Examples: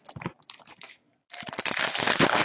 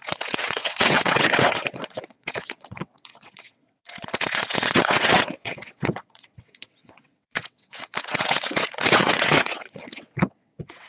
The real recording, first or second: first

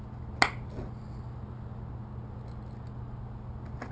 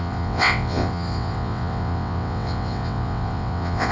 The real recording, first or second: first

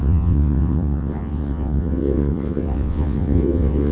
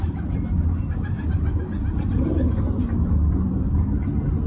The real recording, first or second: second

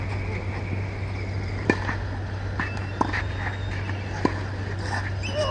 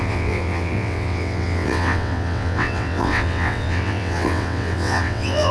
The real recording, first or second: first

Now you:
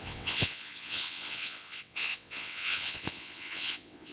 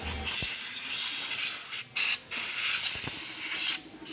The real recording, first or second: second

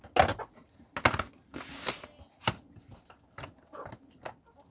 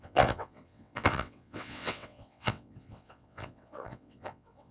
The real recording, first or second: first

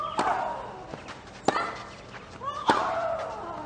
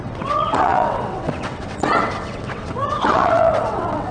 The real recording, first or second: first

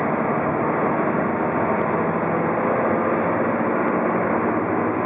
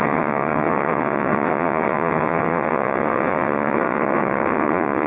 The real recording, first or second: first